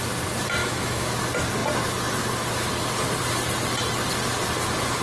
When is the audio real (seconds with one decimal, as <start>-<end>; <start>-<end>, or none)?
0.0-0.6; 1.1-5.0